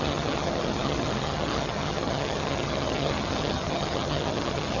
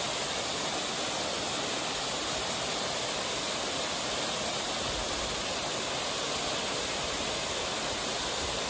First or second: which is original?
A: second